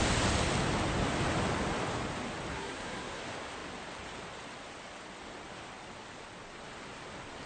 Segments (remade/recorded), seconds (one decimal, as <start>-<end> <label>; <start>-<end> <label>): 0.0-2.5 recorded; 2.5-3.2 remade; 3.2-7.5 recorded